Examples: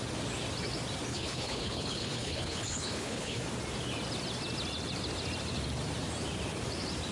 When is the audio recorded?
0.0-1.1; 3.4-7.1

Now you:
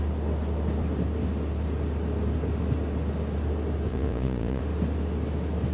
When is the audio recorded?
0.0-3.9; 4.6-5.7

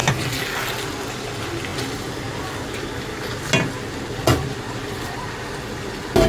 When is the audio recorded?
0.0-6.3

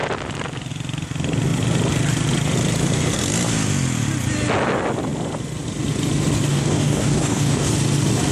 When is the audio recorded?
0.0-6.5; 7.7-8.3